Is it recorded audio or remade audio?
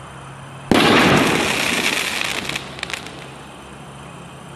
recorded